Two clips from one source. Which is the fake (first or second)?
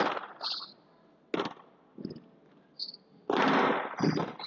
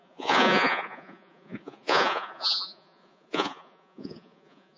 second